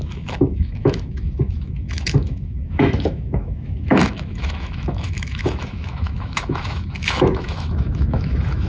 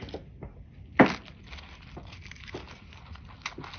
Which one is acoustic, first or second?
second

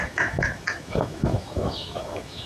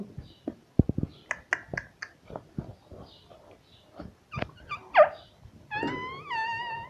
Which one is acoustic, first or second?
second